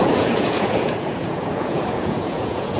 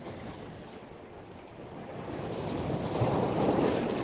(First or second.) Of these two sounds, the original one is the second